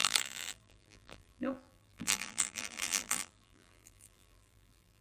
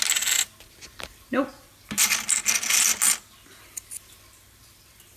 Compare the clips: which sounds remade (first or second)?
first